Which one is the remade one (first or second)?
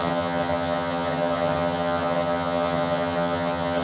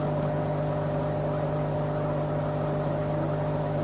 first